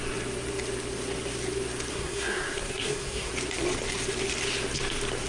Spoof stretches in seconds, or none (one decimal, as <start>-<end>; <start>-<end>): 1.9-3.3